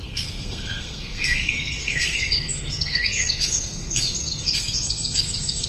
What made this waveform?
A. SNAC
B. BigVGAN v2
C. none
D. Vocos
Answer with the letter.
A